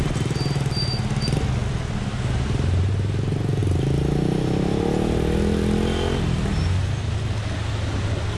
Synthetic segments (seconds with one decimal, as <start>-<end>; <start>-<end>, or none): none